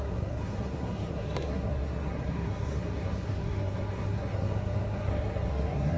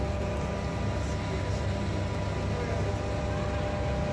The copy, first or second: first